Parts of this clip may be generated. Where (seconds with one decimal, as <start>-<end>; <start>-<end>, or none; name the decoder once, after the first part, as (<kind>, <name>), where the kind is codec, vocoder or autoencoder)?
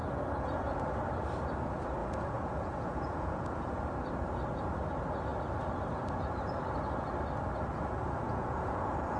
0.0-1.0 (vocoder, Vocos); 2.0-3.8; 7.7-9.2